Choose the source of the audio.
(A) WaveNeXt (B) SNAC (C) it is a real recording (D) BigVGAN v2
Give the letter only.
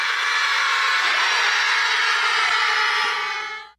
C